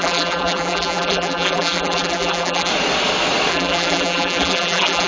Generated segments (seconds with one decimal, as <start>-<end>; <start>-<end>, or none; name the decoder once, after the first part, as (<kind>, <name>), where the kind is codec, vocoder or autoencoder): 0.0-2.7 (vocoder, BigVGAN v2); 3.5-5.1